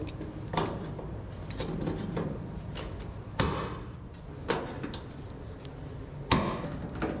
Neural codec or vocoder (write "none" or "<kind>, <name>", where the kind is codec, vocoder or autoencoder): none